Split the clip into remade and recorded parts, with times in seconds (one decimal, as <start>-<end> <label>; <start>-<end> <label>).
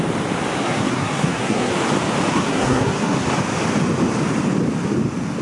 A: 0.0-0.6 recorded; 0.6-1.7 remade; 1.7-2.3 recorded; 2.3-3.3 remade; 3.3-5.4 recorded